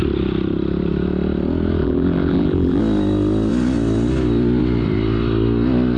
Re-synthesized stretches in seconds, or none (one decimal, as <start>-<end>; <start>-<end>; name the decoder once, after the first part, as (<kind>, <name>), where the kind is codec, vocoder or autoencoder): 1.8-2.8 (vocoder, BigVGAN v2)

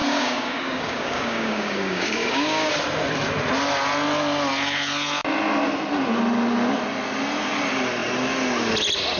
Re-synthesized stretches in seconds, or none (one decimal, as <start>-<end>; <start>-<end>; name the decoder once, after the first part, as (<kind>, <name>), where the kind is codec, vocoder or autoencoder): 0.0-2.7 (codec, DAC)

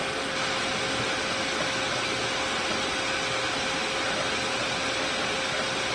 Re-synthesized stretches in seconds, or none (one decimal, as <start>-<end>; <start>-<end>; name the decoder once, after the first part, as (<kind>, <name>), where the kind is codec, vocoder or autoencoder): none

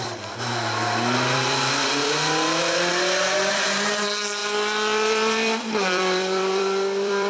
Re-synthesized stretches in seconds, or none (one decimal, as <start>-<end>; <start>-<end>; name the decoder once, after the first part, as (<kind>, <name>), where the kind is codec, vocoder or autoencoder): 0.0-2.9 (vocoder, BigVGAN v2); 3.5-7.3

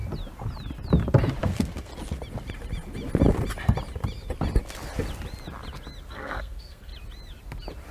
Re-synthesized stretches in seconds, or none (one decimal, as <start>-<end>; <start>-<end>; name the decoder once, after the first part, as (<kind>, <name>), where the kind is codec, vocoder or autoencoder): 1.4-1.9 (codec, SNAC); 6.1-6.9

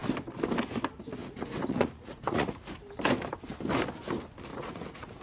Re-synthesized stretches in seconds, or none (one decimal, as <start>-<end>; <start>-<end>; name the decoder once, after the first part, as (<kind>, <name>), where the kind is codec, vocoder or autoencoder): 1.2-2.7 (vocoder, Vocos); 4.5-5.2